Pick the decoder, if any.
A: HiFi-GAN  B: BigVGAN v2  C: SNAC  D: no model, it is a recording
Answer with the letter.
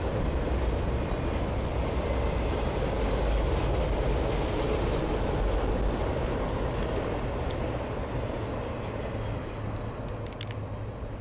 D